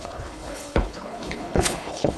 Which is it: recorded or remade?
remade